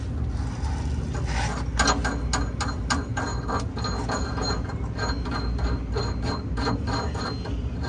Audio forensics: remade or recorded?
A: recorded